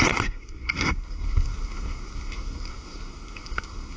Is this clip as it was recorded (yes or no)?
no